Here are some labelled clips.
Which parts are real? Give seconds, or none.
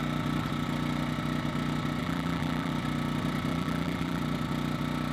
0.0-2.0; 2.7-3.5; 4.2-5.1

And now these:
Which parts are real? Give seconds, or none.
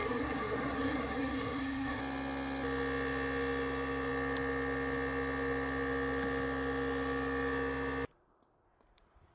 2.0-9.3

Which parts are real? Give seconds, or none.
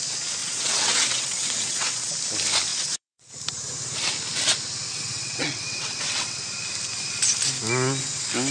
0.0-0.4; 2.1-2.7; 3.3-4.9; 6.4-8.5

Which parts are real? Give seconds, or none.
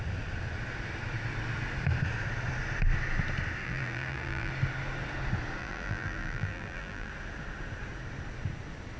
0.0-3.6; 4.5-5.6; 7.1-9.0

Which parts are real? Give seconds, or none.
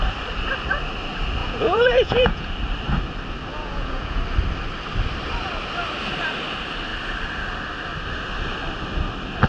0.0-1.4; 2.5-3.5; 4.2-9.5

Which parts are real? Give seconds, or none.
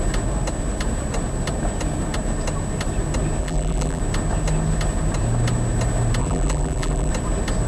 0.0-3.4; 4.0-6.2; 7.1-7.7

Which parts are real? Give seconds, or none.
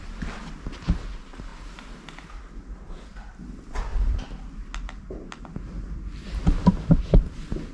0.0-7.7